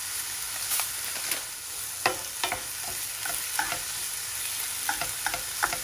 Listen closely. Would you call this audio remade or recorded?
recorded